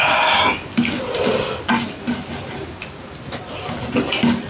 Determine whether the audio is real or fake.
real